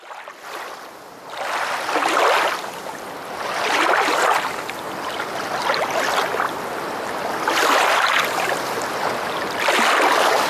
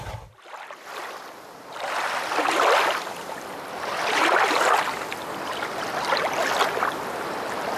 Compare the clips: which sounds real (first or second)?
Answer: first